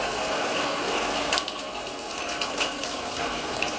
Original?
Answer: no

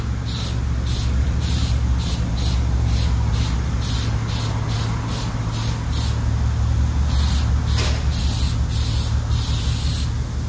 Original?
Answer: yes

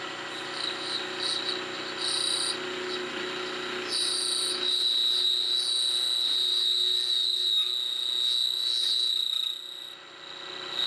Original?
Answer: yes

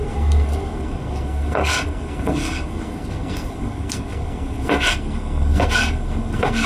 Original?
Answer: no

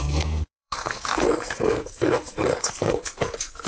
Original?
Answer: no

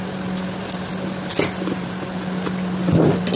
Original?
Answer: yes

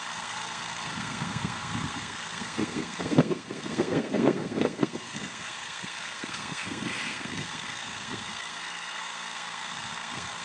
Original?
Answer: no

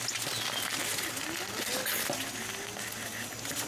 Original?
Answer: yes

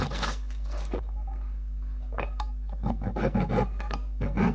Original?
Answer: no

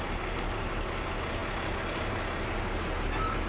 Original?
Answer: yes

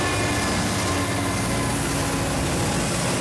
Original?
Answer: yes